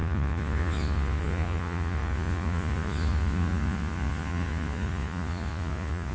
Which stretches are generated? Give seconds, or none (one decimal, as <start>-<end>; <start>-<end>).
0.0-6.1